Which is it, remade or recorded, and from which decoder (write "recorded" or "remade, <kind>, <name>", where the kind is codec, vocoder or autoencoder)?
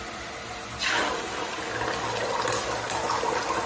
recorded